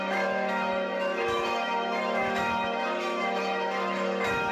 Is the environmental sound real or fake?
fake